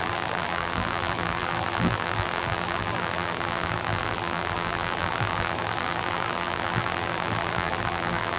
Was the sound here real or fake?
fake